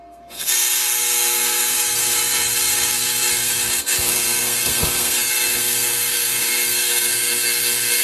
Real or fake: fake